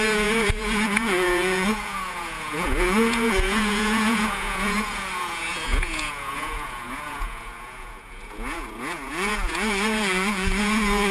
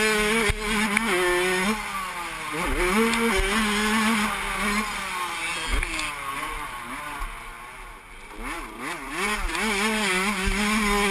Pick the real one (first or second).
second